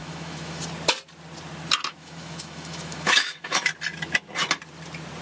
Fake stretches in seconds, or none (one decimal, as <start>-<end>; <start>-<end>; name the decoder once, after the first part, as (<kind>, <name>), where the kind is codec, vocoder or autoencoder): 0.0-0.6 (autoencoder, DAC-VAE); 1.9-3.7